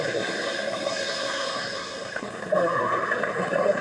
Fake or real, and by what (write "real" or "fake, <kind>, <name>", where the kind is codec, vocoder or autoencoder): fake, codec, SNAC